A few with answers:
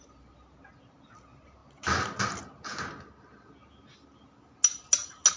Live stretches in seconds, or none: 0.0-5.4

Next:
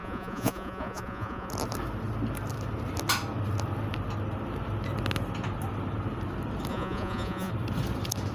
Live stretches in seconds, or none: 1.5-6.7; 7.5-8.3

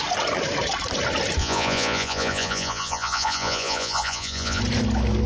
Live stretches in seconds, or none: 0.0-1.4; 4.6-5.3

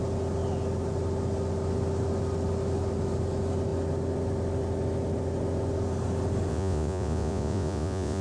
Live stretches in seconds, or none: 0.0-6.5